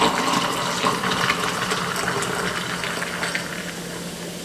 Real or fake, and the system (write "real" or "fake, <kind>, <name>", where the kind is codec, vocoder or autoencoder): real